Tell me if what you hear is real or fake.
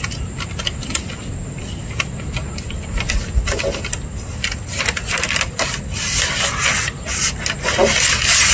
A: real